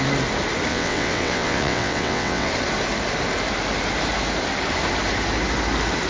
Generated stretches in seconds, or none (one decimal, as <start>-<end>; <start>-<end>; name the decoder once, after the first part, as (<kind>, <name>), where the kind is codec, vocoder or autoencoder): 0.7-2.5 (vocoder, WaveNeXt)